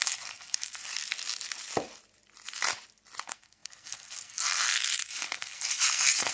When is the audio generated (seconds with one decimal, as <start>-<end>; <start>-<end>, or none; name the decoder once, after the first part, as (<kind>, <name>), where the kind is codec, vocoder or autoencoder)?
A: 0.0-0.9 (codec, SNAC); 3.2-6.3